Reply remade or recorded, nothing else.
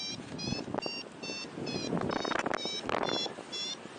recorded